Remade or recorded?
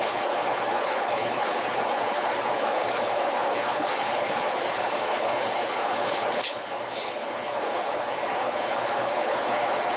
remade